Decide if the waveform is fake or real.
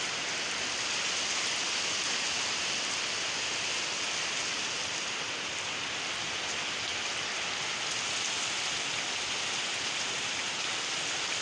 real